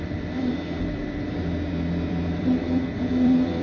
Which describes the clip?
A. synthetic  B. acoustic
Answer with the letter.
A